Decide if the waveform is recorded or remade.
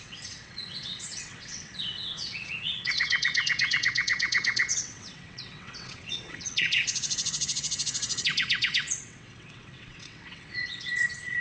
remade